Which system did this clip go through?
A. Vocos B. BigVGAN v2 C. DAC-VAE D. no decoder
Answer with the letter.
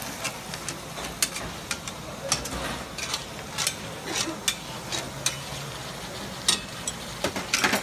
D